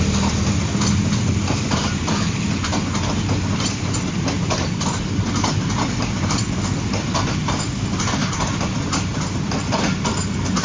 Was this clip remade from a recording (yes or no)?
no